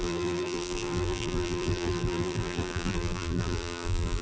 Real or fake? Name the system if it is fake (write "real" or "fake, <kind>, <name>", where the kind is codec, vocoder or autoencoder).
fake, vocoder, BigVGAN v2